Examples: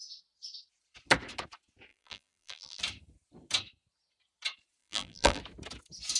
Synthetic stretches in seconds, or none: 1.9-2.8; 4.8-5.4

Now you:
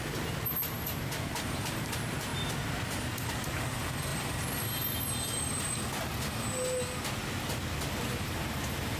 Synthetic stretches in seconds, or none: 0.0-2.3; 3.4-4.1; 7.9-9.0

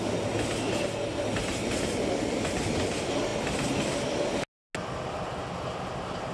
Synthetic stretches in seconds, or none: none

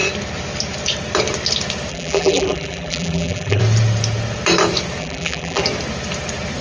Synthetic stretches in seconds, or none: 1.9-3.6; 5.0-5.6

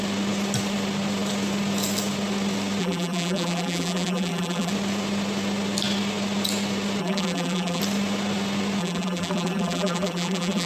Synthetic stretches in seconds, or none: 2.8-4.7; 7.0-7.8; 8.8-10.7